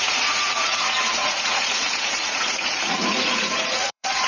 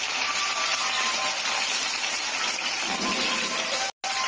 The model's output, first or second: first